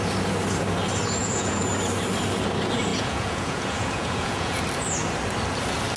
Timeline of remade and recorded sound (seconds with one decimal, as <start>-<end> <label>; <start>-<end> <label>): 0.0-1.2 recorded; 1.2-1.7 remade; 1.7-2.9 recorded; 2.9-4.6 remade; 4.6-6.0 recorded